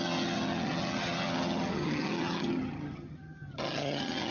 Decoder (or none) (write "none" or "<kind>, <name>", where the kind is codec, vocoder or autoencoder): vocoder, HiFi-GAN